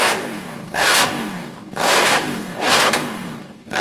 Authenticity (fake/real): fake